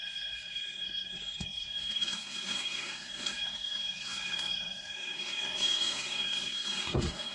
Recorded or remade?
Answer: remade